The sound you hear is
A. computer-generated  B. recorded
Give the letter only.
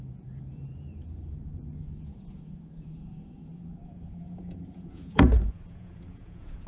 A